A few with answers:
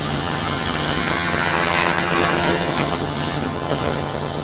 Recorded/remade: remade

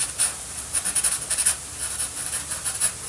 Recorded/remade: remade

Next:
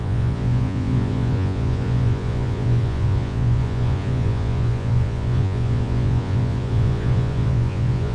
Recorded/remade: remade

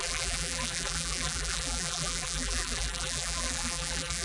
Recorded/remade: remade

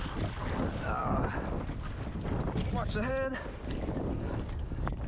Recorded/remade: recorded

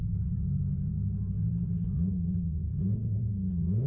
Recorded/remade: remade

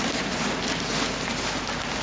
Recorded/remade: recorded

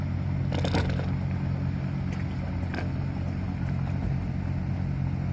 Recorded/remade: recorded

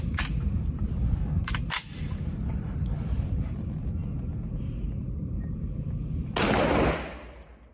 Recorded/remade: recorded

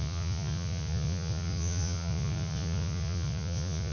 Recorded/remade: remade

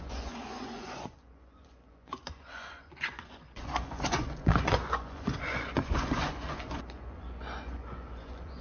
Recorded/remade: remade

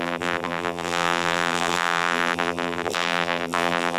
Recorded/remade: remade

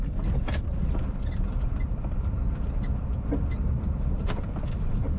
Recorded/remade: recorded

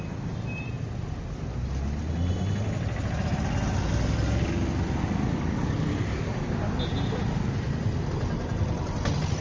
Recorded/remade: recorded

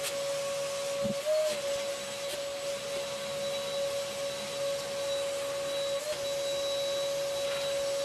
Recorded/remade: recorded